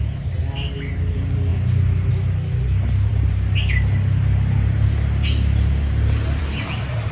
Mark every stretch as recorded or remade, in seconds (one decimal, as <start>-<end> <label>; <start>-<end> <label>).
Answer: 0.0-7.1 recorded